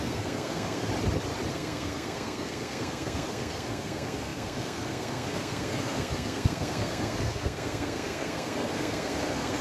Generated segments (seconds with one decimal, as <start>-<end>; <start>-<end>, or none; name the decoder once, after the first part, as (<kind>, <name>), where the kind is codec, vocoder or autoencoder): 0.0-0.9 (codec, SNAC); 1.5-9.6